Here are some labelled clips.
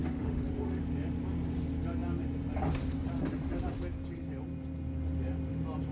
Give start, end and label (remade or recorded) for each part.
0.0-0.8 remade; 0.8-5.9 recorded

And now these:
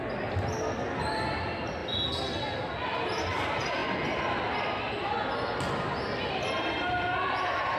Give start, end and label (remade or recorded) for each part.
0.0-7.8 recorded

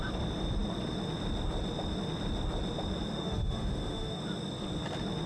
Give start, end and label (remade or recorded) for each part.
0.0-3.1 recorded; 3.1-4.2 remade; 4.2-5.3 recorded

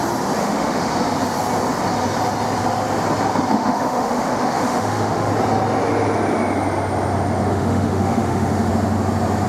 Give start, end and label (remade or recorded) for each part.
0.0-0.4 recorded; 0.4-0.9 remade; 0.9-3.5 recorded; 3.5-5.3 remade; 5.3-7.5 recorded; 7.5-8.7 remade; 8.7-9.5 recorded

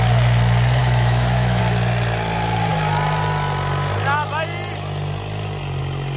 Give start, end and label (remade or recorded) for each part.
0.0-0.8 recorded; 0.8-1.6 remade; 1.6-6.2 recorded

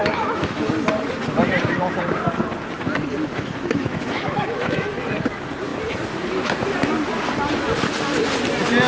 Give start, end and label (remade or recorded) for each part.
0.0-0.7 remade; 0.7-3.2 recorded; 3.2-5.0 remade; 5.0-8.9 recorded